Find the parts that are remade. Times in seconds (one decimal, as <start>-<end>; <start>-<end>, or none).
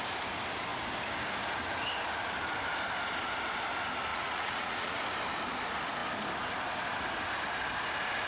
4.1-5.0